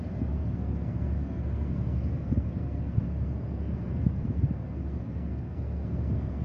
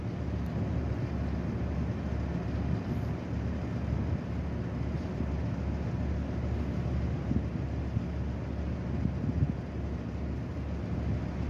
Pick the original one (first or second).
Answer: second